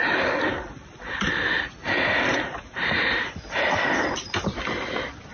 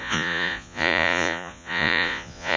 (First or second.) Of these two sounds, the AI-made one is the second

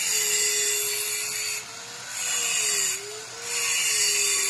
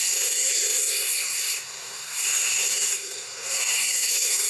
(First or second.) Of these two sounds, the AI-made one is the second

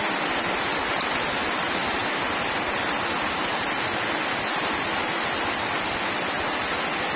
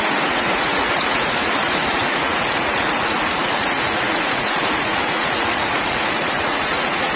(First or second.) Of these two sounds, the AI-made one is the second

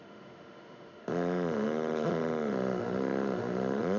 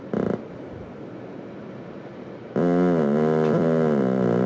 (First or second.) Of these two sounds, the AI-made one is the first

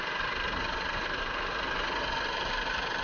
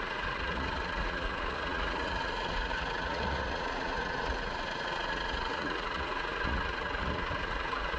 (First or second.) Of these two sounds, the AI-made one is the second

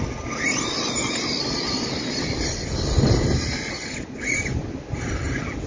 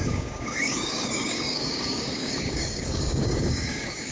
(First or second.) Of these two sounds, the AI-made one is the second